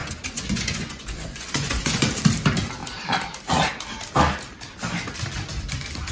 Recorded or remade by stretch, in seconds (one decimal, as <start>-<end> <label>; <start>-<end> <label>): 0.0-2.1 remade; 2.1-6.1 recorded